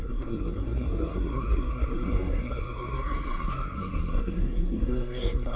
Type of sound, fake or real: fake